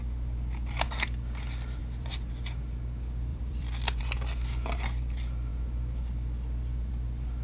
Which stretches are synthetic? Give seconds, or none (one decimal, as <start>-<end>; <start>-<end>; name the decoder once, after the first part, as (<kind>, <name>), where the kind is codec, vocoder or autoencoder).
1.8-2.3 (vocoder, BigVGAN v2); 3.3-4.0